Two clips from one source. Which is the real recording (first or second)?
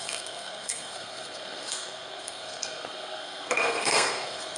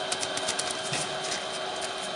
second